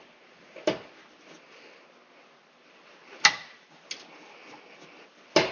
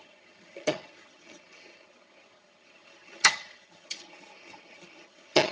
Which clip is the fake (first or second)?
second